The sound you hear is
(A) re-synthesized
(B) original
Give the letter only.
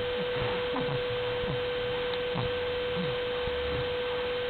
B